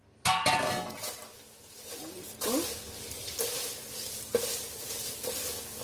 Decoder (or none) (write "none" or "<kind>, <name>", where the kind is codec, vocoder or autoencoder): none